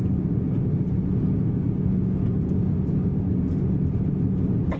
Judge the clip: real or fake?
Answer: real